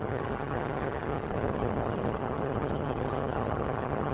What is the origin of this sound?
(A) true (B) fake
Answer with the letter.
B